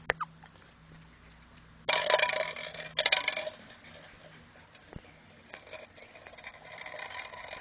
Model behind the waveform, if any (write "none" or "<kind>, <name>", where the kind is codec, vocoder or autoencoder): none